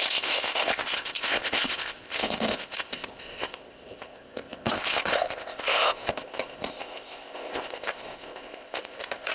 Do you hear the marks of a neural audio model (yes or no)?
yes